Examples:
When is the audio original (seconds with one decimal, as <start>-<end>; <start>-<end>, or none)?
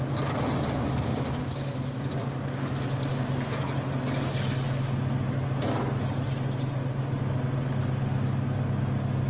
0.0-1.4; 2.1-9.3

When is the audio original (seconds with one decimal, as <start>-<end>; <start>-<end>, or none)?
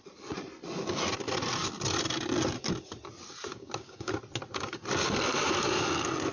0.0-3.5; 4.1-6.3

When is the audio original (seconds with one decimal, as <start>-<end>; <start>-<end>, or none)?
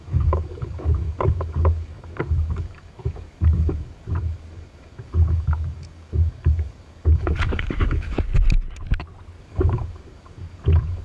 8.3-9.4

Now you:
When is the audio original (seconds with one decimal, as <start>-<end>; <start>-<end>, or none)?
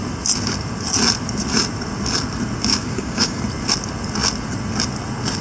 0.0-2.7; 3.4-5.4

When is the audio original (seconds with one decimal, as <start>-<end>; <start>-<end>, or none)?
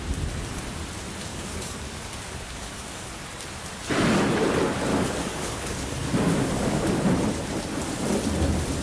0.0-1.3; 3.1-4.9; 7.1-8.8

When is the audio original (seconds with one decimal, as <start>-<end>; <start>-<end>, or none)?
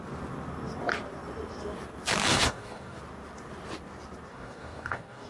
0.0-2.3; 3.0-4.3